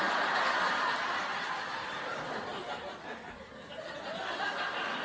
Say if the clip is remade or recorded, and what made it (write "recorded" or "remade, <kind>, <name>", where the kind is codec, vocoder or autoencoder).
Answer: recorded